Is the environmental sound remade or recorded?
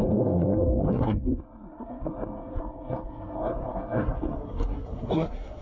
remade